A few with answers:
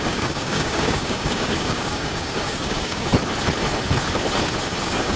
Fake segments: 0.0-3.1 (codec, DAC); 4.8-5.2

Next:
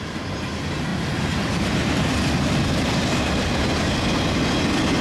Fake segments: none

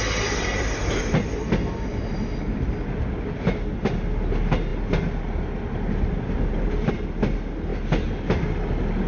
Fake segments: none

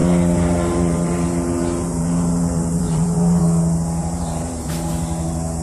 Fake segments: 0.0-3.4 (vocoder, BigVGAN v2); 4.0-4.9

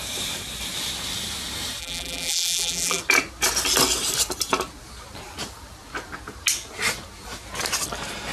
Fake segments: 1.8-3.0 (vocoder, BigVGAN v2)

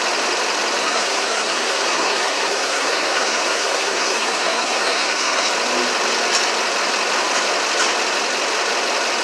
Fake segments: 0.8-5.5 (codec, SNAC)